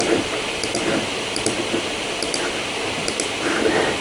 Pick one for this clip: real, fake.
real